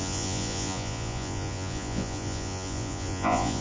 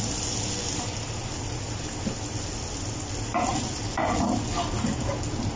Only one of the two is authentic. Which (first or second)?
second